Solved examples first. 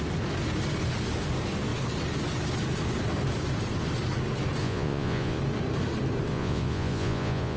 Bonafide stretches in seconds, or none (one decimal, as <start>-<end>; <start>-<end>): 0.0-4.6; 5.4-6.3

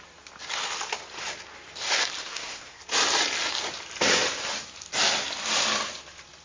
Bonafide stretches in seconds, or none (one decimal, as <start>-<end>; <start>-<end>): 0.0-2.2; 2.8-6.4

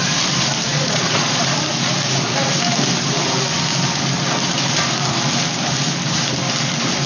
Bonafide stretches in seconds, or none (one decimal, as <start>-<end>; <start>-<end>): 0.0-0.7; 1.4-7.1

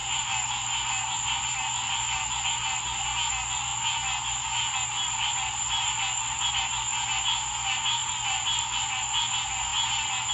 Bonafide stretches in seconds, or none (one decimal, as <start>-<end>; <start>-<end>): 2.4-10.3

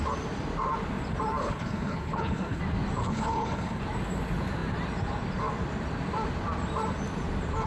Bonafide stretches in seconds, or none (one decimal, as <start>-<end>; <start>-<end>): 0.0-1.4; 2.6-3.0; 3.8-7.7

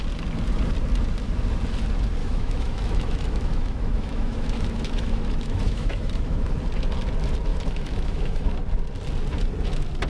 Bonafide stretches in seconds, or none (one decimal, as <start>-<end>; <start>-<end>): 0.0-2.2; 6.5-7.5; 8.6-10.1